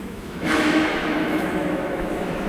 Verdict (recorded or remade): remade